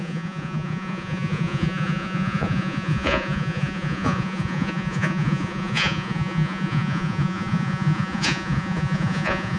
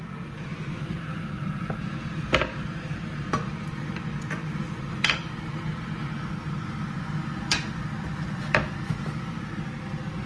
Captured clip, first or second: second